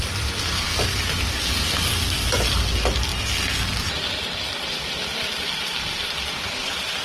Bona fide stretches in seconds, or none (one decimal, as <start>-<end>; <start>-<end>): 0.0-7.0